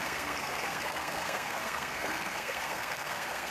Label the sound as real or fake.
fake